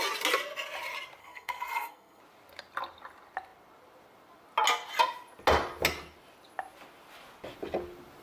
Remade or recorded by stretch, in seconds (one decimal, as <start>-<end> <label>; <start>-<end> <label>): 0.0-1.2 recorded; 1.2-2.2 remade; 2.2-8.2 recorded